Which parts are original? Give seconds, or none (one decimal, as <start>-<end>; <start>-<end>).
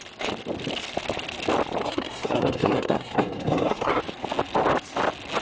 0.0-1.8; 4.0-5.4